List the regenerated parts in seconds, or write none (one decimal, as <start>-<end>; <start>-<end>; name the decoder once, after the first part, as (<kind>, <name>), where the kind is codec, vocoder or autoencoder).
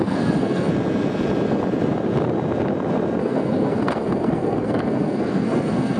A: 0.0-0.7 (codec, SNAC); 3.2-6.0